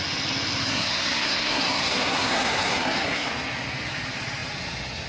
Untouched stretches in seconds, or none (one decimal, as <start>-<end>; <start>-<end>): 0.0-0.6; 3.3-5.1

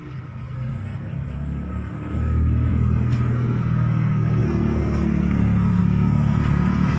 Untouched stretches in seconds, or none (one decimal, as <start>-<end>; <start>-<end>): none

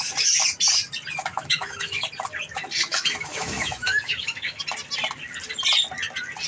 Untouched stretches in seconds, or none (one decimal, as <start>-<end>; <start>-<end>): 0.0-1.3; 2.1-2.9; 4.6-6.5